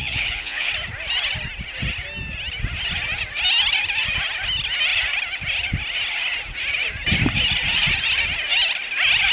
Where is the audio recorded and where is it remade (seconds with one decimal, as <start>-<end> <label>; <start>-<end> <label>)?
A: 0.0-0.7 remade; 0.7-9.3 recorded